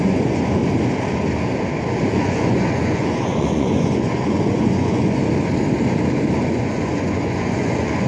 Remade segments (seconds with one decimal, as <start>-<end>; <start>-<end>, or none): 0.0-0.6; 2.1-5.2; 6.4-8.1